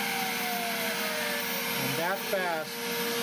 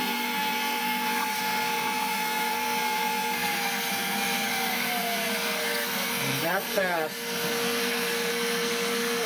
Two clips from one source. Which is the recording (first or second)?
first